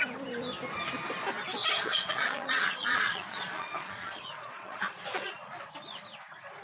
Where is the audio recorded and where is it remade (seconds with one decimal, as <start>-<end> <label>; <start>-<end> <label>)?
0.0-1.6 recorded; 1.6-5.6 remade; 5.6-6.6 recorded